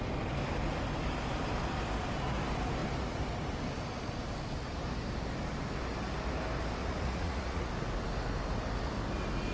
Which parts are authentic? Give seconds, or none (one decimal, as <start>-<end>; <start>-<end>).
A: 0.0-6.8; 7.7-9.5